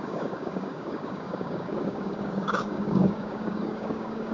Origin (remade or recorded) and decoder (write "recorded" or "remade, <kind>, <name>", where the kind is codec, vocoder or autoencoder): remade, codec, DAC